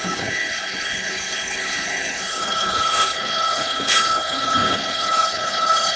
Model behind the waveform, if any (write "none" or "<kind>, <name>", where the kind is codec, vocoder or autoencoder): codec, HILCodec